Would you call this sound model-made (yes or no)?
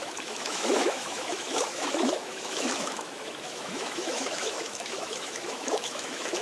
yes